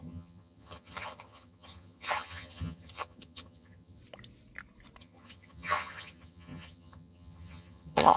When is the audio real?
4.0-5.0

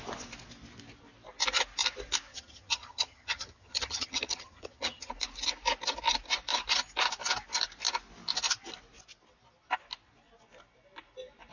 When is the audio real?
0.0-2.3; 5.1-11.5